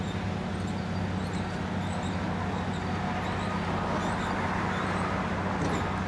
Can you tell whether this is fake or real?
real